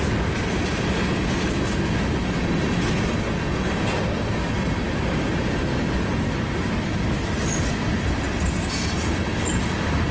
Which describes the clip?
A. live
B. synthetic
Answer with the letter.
A